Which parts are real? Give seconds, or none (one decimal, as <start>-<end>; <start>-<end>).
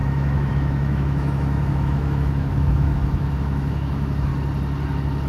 4.3-5.3